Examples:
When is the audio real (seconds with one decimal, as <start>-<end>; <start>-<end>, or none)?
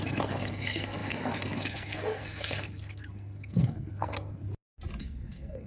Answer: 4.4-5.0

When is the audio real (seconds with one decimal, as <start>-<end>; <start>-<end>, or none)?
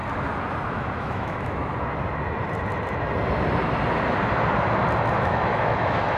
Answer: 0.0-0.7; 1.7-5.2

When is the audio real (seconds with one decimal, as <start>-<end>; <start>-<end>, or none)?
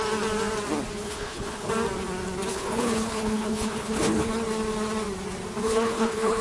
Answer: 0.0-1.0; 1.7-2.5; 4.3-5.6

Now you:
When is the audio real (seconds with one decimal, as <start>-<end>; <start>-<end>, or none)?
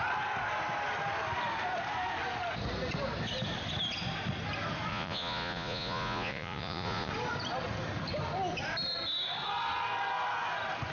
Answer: 0.0-4.9; 7.1-10.9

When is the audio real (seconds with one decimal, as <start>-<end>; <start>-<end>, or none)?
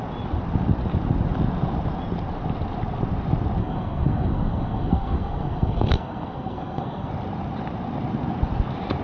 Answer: 0.0-3.6; 7.1-9.0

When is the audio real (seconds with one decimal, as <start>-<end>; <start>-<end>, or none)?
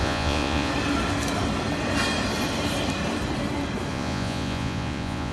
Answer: 0.7-3.9